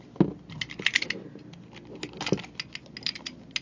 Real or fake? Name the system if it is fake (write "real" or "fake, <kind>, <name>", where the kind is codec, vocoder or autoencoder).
real